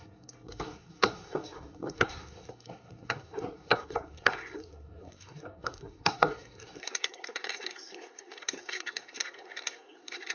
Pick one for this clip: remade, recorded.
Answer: remade